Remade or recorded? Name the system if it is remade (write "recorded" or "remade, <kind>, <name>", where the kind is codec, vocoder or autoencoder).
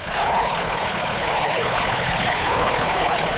remade, codec, HILCodec